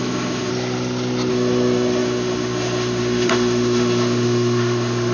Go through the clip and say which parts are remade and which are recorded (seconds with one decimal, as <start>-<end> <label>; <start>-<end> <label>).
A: 0.0-0.5 remade; 0.5-1.3 recorded; 1.3-5.1 remade

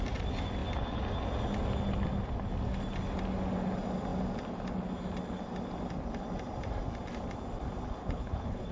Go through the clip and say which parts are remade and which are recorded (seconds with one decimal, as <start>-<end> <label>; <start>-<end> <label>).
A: 0.0-8.0 recorded; 8.0-8.7 remade